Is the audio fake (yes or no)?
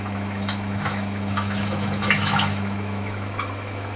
yes